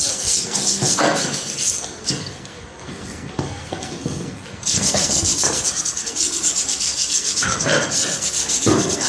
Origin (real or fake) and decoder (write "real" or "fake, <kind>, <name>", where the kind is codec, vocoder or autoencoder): fake, codec, SNAC